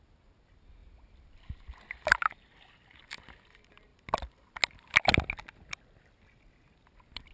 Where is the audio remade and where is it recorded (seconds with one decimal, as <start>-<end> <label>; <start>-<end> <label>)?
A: 0.0-7.3 recorded

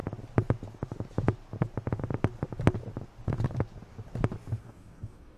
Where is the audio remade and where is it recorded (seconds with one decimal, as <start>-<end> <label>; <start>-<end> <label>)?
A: 0.0-4.6 recorded; 4.6-5.4 remade

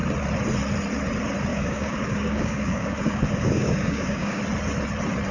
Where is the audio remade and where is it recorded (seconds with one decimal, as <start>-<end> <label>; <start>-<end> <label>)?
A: 0.0-1.5 recorded; 1.5-4.4 remade; 4.4-5.3 recorded

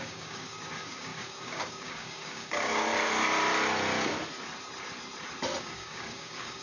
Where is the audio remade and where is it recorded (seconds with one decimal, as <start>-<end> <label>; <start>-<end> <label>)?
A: 0.0-2.9 remade; 2.9-5.6 recorded; 5.6-6.6 remade

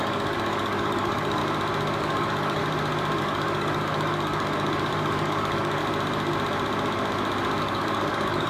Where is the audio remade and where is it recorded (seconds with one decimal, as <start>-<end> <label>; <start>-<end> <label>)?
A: 0.0-1.4 remade; 1.4-2.0 recorded; 2.0-2.6 remade; 2.6-3.2 recorded; 3.2-5.8 remade; 5.8-7.6 recorded; 7.6-8.5 remade